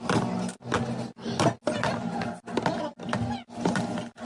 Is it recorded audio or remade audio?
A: recorded